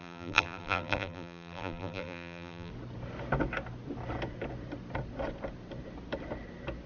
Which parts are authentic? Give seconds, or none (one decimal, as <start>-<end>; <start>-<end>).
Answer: 2.7-6.9